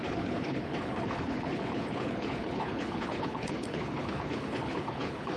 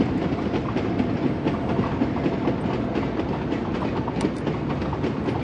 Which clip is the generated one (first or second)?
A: first